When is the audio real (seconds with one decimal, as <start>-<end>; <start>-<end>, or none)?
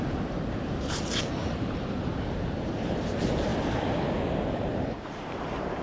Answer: 3.5-4.5